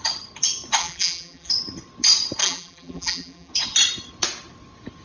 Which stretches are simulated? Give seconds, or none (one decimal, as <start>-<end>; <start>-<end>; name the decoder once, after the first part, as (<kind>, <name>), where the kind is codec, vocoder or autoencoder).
0.8-1.5 (vocoder, BigVGAN v2); 2.4-3.5

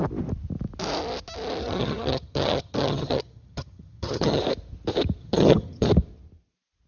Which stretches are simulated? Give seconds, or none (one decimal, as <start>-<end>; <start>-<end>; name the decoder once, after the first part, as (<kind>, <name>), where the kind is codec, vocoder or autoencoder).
1.6-4.4 (vocoder, HiFi-GAN); 5.2-5.9